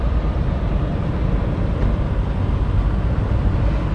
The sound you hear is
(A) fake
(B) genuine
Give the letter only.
B